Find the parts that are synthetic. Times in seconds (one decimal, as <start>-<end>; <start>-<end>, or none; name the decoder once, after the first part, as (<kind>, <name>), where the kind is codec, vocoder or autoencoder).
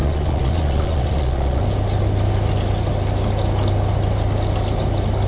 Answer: 0.0-1.6 (vocoder, Vocos)